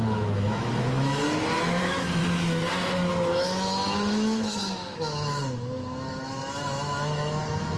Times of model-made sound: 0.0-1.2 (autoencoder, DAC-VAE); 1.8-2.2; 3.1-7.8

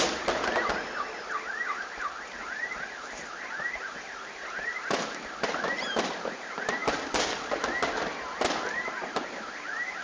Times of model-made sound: none

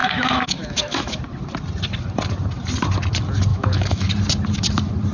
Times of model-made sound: 0.0-1.2 (autoencoder, DAC-VAE); 3.5-4.1

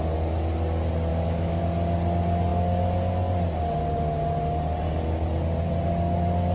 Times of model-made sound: 1.1-1.6 (autoencoder, DAC-VAE)

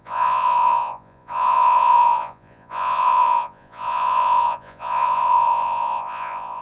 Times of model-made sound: 0.0-6.6 (vocoder, Vocos)